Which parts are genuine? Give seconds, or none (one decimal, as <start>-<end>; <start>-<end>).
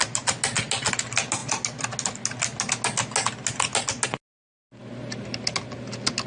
0.0-6.3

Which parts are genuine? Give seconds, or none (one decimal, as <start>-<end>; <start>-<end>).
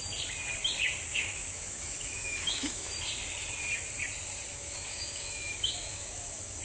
0.0-1.1; 2.9-4.5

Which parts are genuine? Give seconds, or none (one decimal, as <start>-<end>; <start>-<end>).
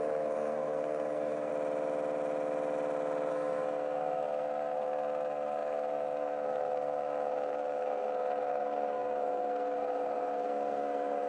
1.5-3.3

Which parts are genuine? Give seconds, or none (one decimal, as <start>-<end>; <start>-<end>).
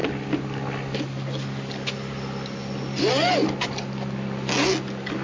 0.0-5.2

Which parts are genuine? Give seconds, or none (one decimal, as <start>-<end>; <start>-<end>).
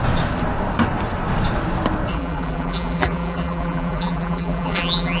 0.0-2.1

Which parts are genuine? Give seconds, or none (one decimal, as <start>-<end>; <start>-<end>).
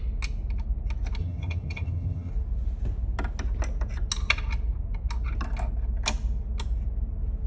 0.0-1.2; 2.3-7.5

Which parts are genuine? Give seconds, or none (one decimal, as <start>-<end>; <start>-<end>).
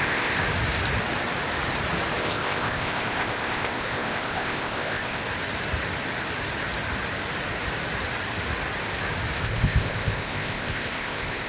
0.4-2.2; 5.2-9.4